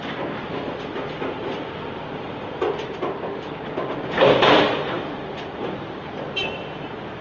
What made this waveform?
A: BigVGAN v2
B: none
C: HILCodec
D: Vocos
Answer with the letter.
A